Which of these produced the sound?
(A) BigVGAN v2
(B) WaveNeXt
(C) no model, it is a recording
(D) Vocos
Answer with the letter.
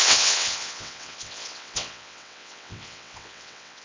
B